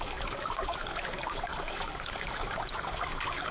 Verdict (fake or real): fake